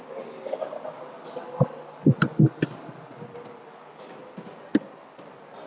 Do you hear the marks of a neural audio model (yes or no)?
no